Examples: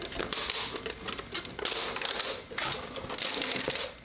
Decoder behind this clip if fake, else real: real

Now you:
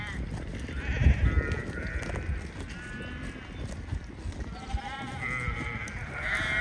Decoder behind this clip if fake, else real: real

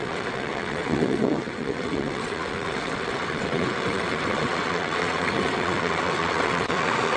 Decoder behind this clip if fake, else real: fake, vocoder, WaveNeXt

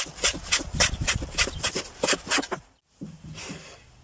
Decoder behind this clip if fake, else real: real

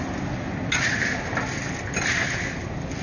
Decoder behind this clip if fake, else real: real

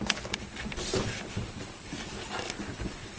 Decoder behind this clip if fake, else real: real